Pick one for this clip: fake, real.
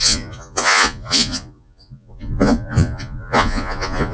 fake